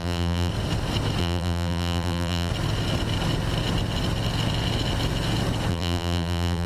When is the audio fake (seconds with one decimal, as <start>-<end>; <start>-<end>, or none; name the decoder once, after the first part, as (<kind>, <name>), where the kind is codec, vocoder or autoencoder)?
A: 0.0-0.5 (vocoder, BigVGAN v2); 1.2-2.5; 5.7-6.7